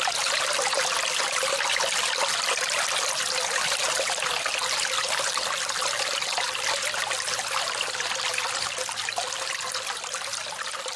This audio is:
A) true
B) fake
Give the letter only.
A